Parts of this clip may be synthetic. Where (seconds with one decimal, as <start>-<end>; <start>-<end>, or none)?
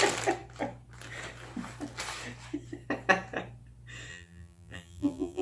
4.1-5.4